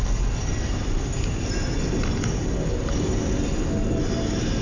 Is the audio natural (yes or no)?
yes